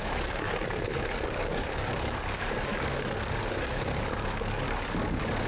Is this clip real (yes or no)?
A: no